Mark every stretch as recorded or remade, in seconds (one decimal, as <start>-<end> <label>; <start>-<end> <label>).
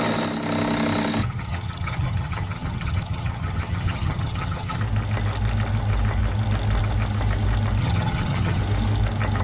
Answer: 0.0-1.2 recorded; 1.2-4.8 remade; 4.8-7.8 recorded; 7.8-8.6 remade; 8.6-9.4 recorded